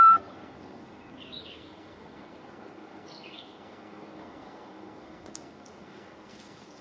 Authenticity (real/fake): fake